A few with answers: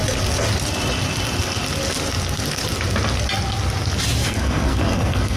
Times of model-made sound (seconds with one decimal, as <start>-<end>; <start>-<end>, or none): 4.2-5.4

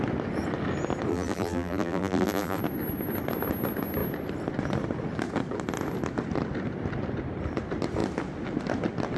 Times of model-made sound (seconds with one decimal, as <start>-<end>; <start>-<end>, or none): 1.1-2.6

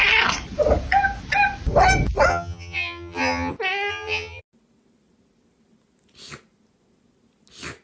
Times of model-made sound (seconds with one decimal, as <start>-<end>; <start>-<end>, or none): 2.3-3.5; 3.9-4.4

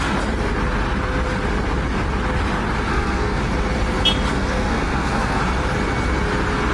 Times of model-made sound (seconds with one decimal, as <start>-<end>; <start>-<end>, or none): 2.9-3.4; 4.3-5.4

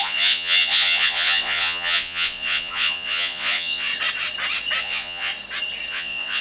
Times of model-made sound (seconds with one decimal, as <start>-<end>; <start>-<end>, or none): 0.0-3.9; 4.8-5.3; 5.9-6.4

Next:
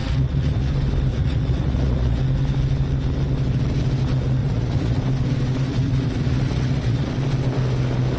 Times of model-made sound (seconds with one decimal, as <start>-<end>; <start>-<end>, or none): 0.0-0.7; 1.1-2.2; 4.4-5.0; 5.7-7.1

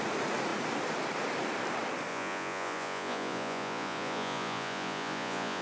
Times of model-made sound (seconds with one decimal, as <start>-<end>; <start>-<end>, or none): 2.1-5.6

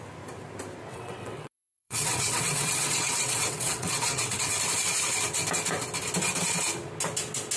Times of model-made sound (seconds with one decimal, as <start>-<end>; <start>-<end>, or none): 0.9-4.6